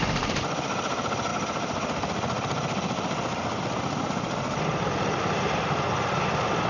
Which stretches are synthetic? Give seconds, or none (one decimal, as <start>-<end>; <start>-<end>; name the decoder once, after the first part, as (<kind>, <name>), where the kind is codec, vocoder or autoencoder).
none